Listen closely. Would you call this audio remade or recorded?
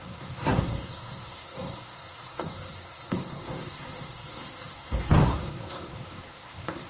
remade